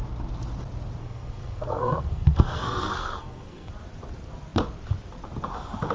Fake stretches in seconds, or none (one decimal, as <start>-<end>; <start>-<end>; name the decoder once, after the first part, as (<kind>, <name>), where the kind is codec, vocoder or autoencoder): 1.0-3.7 (codec, SNAC)